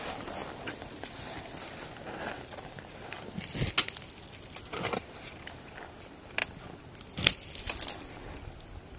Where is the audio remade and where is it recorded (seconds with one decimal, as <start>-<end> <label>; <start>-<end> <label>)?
0.0-9.0 recorded

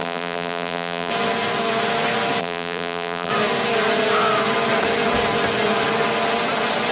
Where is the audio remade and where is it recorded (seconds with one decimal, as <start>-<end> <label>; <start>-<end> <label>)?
0.0-1.1 remade; 1.1-2.4 recorded; 2.4-3.3 remade; 3.3-6.9 recorded

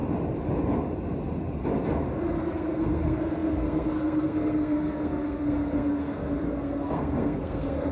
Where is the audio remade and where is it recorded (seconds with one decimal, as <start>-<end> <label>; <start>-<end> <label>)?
0.0-2.4 recorded; 2.4-7.9 remade

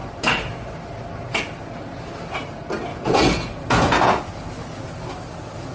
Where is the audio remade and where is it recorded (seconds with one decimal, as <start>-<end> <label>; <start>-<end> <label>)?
0.0-2.9 recorded; 2.9-4.2 remade; 4.2-5.7 recorded

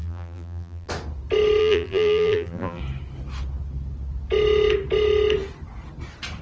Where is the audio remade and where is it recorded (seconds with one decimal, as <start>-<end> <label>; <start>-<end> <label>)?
0.0-0.9 remade; 0.9-1.6 recorded; 1.6-2.8 remade; 2.8-6.4 recorded

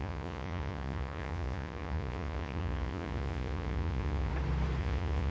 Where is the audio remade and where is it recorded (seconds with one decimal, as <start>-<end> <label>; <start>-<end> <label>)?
0.0-4.3 remade; 4.3-4.8 recorded; 4.8-5.3 remade

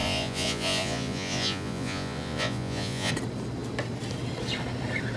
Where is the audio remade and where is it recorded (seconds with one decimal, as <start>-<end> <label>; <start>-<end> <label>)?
0.0-3.1 remade; 3.1-5.2 recorded